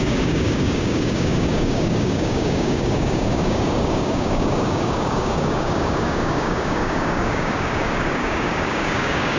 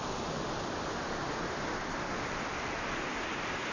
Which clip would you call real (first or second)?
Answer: second